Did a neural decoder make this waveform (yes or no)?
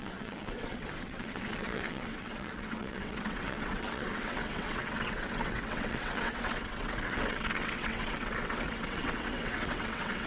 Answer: yes